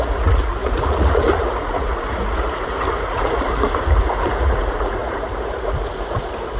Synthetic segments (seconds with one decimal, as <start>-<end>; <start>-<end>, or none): 0.0-6.6